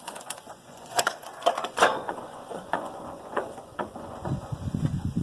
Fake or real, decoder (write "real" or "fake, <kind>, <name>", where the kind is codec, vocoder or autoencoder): fake, vocoder, Vocos